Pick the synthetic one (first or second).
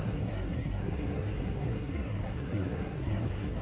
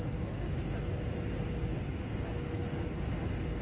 first